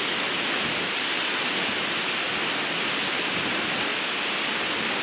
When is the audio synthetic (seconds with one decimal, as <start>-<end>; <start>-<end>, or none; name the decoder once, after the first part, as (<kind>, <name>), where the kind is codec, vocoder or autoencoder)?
none